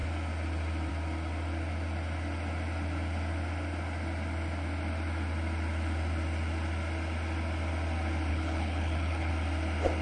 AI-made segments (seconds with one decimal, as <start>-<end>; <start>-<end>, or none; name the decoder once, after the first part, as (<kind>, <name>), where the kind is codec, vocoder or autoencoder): 8.3-9.3 (codec, HILCodec)